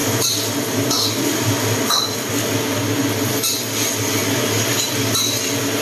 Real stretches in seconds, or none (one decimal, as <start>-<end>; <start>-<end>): 0.0-5.8